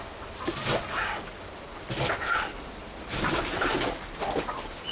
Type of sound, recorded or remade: recorded